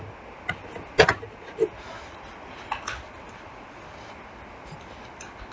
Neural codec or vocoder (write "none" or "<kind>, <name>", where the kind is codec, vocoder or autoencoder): none